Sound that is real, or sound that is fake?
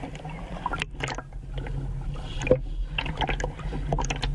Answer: real